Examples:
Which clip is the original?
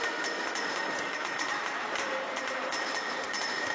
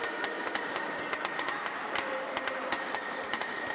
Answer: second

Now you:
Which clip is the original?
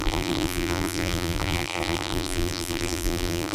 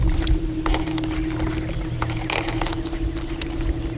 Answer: second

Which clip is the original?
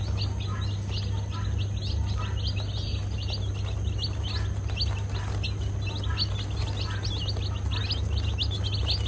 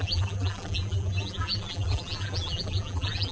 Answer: first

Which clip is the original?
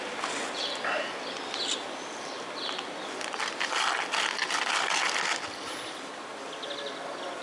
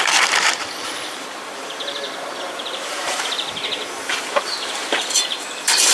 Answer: first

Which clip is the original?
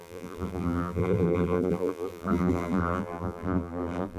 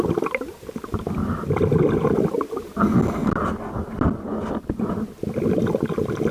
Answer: second